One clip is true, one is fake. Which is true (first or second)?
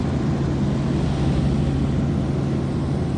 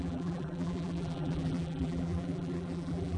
first